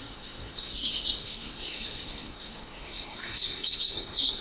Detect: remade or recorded remade